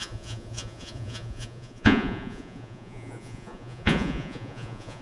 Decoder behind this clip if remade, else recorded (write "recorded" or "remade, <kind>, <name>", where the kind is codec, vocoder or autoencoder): remade, vocoder, Vocos